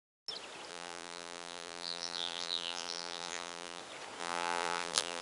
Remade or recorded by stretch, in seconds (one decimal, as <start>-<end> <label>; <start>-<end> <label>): 0.0-0.7 recorded; 0.7-3.8 remade; 3.8-4.2 recorded; 4.2-5.2 remade